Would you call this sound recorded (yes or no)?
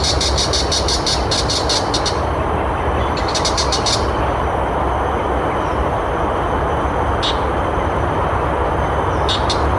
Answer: yes